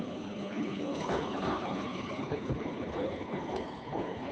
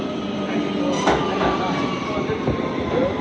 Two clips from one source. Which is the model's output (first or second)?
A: first